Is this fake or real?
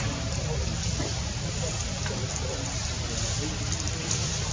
real